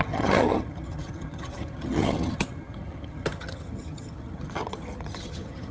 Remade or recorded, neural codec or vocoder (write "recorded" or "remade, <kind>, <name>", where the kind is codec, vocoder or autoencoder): remade, vocoder, HiFi-GAN